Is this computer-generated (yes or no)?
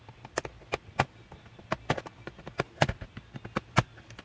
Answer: no